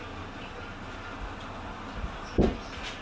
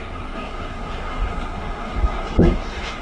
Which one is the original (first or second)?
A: first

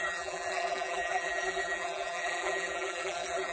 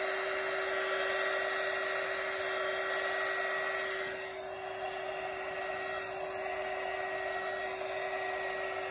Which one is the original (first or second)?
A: second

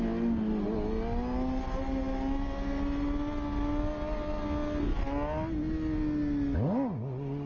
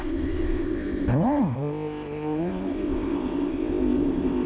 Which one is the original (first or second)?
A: first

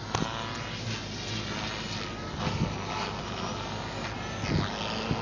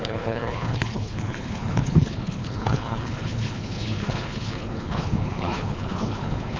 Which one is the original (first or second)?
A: first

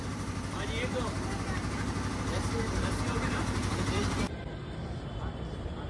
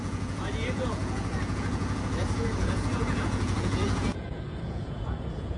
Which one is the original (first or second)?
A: first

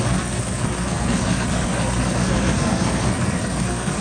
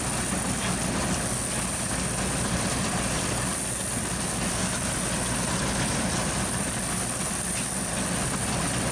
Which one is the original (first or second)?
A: second